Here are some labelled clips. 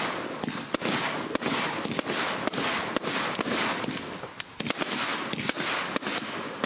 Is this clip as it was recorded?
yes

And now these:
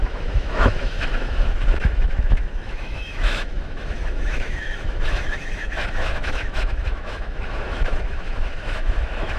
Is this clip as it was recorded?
no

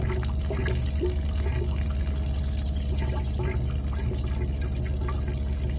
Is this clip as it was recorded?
yes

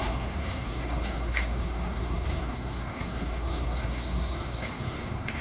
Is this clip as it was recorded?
no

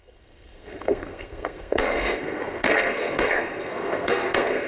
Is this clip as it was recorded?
no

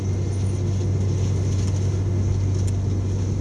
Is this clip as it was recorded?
yes